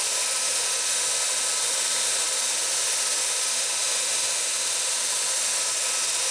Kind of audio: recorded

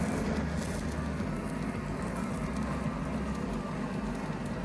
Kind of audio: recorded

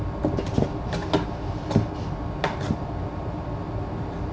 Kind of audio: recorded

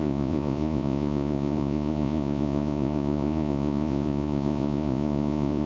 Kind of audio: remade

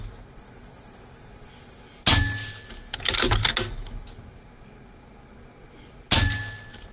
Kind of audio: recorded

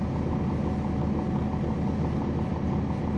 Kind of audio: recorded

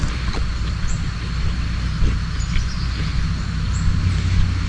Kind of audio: recorded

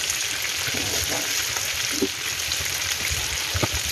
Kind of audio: recorded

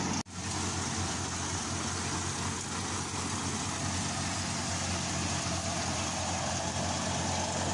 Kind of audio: recorded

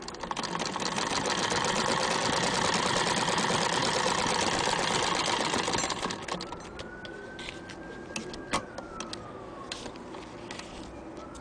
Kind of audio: recorded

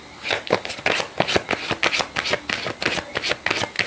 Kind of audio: recorded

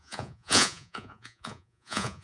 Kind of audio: remade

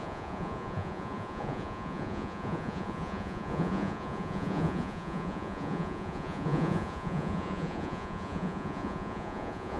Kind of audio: remade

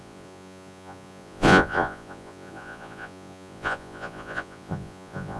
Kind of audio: remade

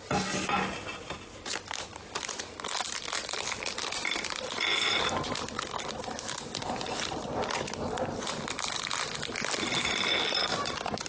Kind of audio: recorded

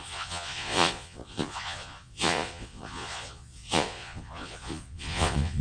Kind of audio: remade